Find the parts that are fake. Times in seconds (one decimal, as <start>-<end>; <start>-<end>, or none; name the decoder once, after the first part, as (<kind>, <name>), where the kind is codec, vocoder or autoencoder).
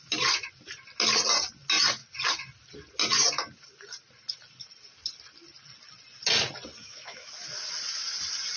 6.8-7.3 (autoencoder, DAC-VAE)